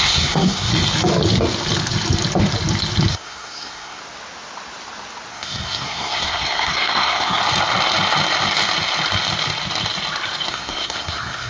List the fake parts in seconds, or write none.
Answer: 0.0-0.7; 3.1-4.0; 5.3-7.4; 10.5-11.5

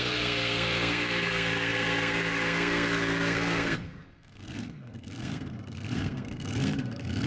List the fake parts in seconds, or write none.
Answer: 0.0-7.3

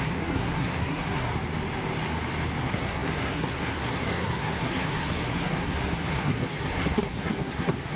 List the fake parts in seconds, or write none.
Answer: 0.0-1.3; 2.6-8.0

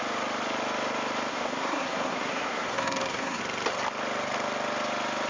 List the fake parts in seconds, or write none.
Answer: 1.3-3.4

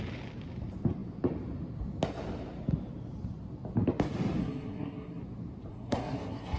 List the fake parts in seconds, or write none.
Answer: 4.4-5.2; 5.7-6.6

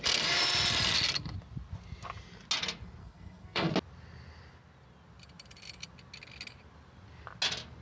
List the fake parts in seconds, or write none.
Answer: 3.0-3.7

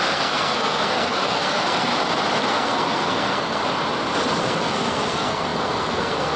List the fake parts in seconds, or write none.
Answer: 0.0-1.9; 2.5-3.6; 4.4-6.4